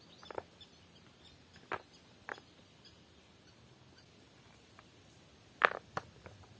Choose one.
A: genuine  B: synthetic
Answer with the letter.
A